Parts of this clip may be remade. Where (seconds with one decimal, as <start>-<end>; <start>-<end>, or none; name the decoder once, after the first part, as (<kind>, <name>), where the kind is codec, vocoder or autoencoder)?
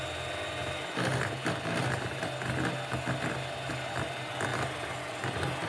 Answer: 0.6-3.7 (vocoder, BigVGAN v2); 4.5-5.1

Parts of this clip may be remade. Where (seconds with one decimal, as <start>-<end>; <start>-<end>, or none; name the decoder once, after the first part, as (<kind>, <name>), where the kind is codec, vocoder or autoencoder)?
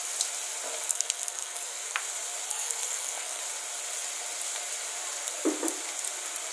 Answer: 0.9-2.0 (codec, SNAC); 2.5-3.4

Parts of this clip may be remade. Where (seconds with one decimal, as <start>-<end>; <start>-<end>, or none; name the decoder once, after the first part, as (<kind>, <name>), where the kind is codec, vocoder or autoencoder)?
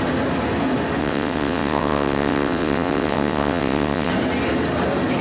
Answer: 1.0-4.1 (vocoder, WaveNeXt)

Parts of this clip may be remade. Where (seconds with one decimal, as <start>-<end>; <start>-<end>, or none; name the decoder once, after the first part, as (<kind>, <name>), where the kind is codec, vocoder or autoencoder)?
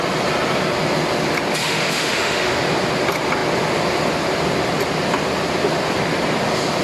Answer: 1.6-2.6 (autoencoder, DAC-VAE)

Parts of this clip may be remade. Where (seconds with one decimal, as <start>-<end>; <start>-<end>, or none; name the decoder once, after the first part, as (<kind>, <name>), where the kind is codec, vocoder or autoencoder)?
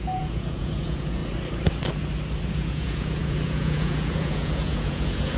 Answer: 0.0-1.2 (vocoder, Vocos); 2.5-5.4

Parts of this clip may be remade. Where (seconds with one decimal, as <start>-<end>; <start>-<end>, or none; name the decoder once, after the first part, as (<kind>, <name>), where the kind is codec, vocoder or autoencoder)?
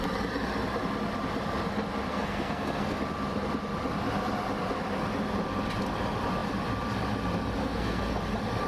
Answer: 2.1-3.0 (codec, SNAC); 7.6-8.2